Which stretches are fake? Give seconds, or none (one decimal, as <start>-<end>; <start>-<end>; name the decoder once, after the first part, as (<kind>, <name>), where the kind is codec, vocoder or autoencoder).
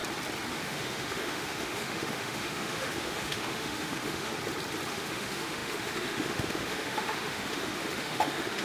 0.5-4.3 (autoencoder, DAC-VAE); 4.9-8.6